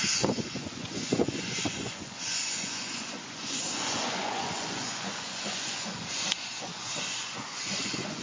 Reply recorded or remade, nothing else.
remade